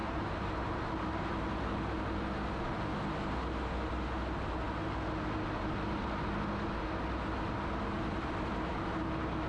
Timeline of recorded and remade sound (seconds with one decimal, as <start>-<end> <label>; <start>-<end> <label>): 0.0-1.8 remade; 1.8-9.5 recorded